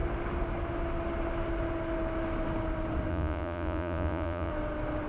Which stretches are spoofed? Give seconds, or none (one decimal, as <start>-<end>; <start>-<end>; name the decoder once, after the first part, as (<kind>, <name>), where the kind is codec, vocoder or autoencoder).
3.1-4.5 (vocoder, Vocos)